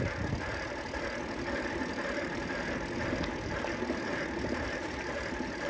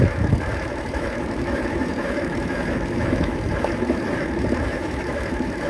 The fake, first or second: second